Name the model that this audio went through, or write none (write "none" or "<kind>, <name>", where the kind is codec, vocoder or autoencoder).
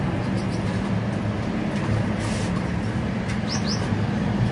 none